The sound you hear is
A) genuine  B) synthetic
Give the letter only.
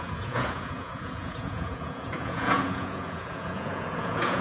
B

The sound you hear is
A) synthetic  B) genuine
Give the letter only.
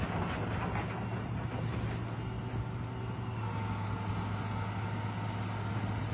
B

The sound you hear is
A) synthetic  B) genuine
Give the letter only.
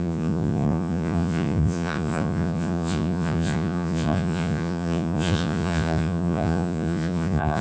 A